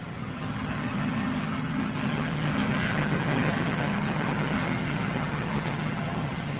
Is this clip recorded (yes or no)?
no